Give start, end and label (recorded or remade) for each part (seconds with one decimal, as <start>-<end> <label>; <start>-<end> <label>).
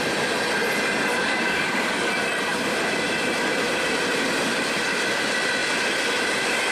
0.0-1.1 recorded; 1.1-2.1 remade; 2.1-6.7 recorded